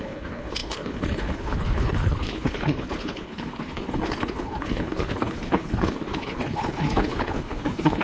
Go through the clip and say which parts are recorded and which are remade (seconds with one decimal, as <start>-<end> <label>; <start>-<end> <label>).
0.0-8.0 remade